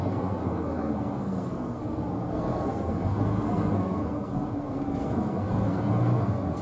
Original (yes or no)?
no